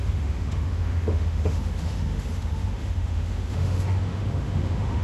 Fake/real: fake